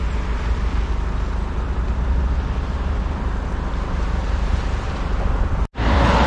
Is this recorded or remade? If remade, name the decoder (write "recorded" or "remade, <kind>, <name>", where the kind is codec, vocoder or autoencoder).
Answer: recorded